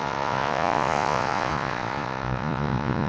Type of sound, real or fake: fake